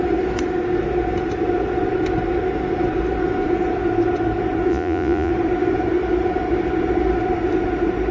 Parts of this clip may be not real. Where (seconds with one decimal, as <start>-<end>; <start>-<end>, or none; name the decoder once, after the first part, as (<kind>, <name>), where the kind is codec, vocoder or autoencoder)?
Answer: 4.7-5.3 (vocoder, Vocos)

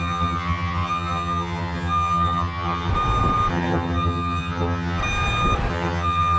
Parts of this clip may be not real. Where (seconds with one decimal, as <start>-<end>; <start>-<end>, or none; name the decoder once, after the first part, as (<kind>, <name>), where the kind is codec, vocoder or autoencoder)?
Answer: 0.0-2.9 (vocoder, HiFi-GAN); 3.5-5.0; 5.7-6.4